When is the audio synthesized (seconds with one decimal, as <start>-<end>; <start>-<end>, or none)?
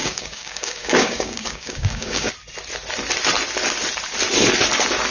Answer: 0.0-2.3